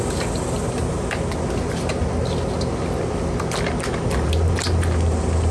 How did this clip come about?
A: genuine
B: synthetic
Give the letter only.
A